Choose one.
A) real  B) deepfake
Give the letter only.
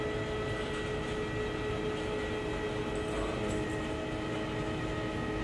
A